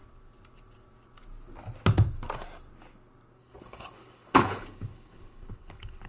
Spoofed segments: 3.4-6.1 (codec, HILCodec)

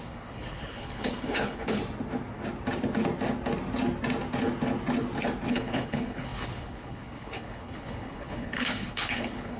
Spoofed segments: 0.0-1.8 (codec, HILCodec); 5.5-9.6

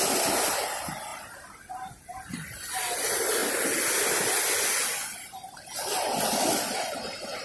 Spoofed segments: none

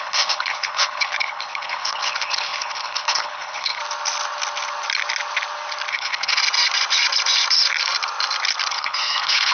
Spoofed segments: 0.0-3.8 (codec, HILCodec); 5.9-6.4; 8.7-9.5